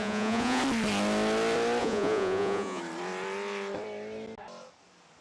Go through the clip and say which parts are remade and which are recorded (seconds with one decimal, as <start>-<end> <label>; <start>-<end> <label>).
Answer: 0.0-0.6 remade; 0.6-1.8 recorded; 1.8-2.8 remade; 2.8-5.2 recorded